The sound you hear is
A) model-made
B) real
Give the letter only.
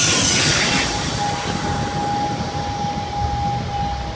B